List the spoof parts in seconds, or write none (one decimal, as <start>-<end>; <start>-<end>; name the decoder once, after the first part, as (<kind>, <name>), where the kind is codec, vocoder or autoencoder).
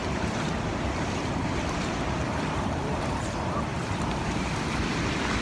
0.0-3.2 (vocoder, BigVGAN v2); 3.7-4.5